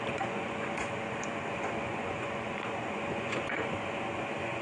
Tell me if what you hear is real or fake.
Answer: fake